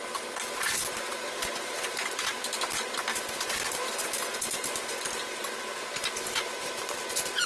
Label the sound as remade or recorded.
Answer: recorded